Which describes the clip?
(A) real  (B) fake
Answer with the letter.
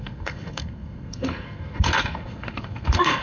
B